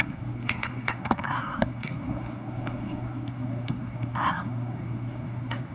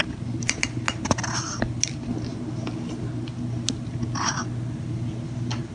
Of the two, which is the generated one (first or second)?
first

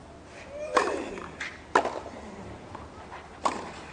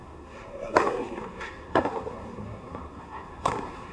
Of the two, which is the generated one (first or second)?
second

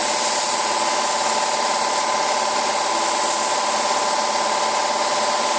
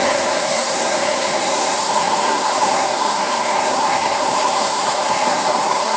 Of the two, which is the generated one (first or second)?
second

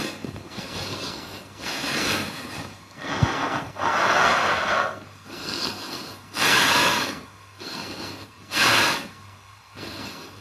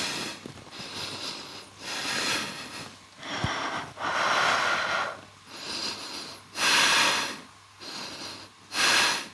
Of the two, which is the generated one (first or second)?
first